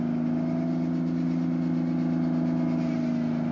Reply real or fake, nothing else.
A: real